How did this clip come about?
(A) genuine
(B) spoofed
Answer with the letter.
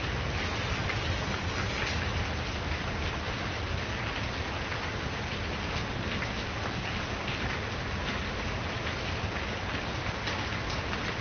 A